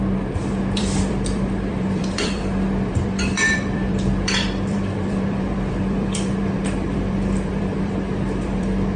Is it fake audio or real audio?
fake